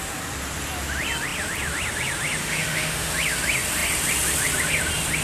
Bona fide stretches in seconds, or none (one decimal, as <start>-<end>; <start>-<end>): 0.0-2.4; 3.1-5.2